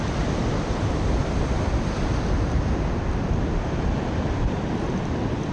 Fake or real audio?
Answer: real